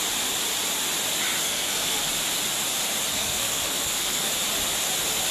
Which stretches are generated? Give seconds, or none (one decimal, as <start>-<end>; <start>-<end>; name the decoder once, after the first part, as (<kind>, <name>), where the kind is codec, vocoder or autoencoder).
1.4-2.1 (codec, SNAC); 3.1-4.3